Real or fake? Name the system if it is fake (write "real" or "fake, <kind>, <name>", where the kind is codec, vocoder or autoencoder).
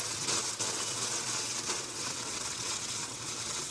fake, vocoder, WaveNeXt